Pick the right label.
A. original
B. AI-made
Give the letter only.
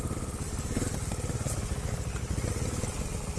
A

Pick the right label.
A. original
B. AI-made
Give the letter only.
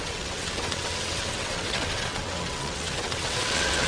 B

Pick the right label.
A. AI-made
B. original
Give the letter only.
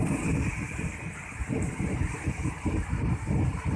B